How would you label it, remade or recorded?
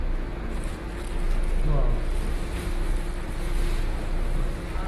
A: recorded